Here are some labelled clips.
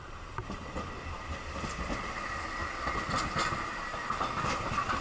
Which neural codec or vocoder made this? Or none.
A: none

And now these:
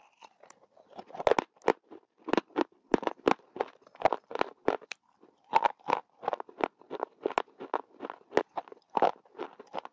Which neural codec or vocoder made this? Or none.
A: none